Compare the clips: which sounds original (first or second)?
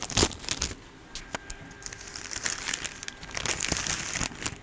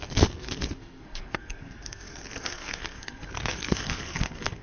first